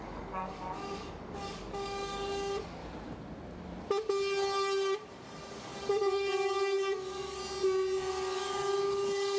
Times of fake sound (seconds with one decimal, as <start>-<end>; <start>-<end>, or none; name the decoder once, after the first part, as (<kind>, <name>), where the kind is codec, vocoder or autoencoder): 0.0-2.8 (codec, DAC); 5.5-7.4; 8.1-9.4